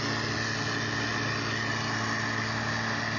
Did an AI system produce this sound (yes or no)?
no